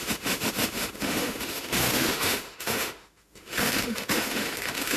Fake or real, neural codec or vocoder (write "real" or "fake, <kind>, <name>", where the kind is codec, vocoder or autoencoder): fake, autoencoder, DAC-VAE